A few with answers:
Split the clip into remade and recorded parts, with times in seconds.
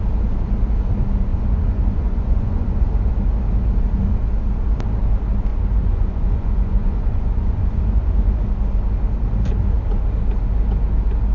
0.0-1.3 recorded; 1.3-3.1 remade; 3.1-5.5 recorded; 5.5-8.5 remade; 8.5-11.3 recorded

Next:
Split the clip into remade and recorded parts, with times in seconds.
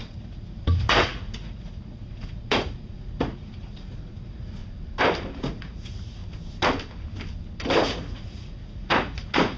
0.0-4.6 remade; 4.6-5.4 recorded; 5.4-6.2 remade; 6.2-7.8 recorded; 7.8-9.6 remade